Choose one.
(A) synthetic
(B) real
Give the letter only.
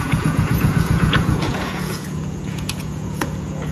A